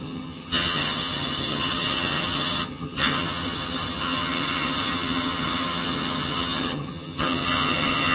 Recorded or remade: remade